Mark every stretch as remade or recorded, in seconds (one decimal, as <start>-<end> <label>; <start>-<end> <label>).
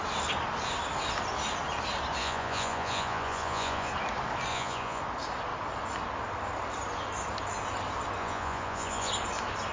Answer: 0.0-2.2 recorded; 2.2-3.9 remade; 3.9-4.5 recorded; 4.5-5.0 remade; 5.0-8.2 recorded; 8.2-9.1 remade; 9.1-9.7 recorded